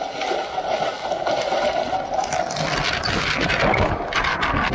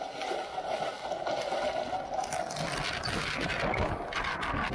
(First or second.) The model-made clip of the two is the first